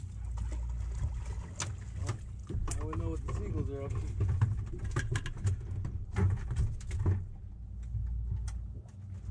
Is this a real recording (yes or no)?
yes